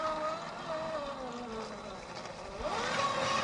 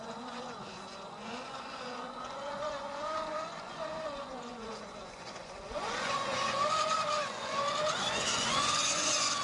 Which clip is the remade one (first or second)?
second